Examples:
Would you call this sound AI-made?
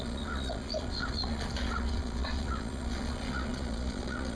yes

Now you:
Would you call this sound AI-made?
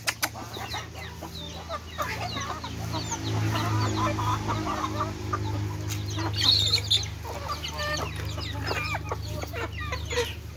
no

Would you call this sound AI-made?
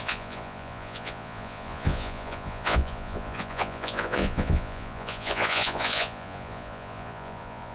yes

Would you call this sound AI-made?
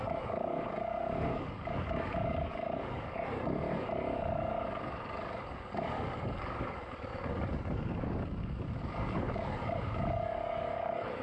yes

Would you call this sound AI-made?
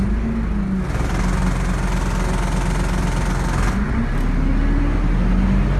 no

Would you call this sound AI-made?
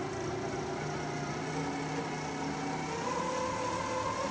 no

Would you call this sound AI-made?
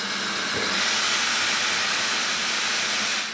no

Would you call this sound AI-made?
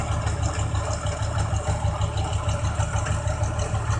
no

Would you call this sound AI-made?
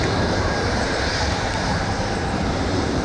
yes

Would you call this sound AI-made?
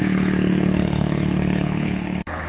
yes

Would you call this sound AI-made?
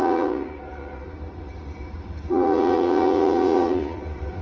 yes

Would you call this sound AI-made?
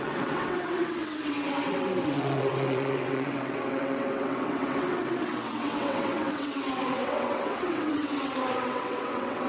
yes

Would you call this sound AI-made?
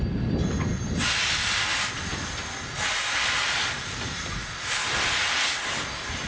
no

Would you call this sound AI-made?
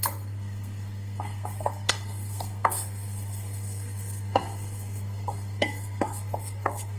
yes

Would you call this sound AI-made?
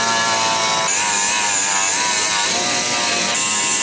no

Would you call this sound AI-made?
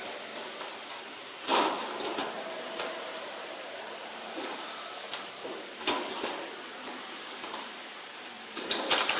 yes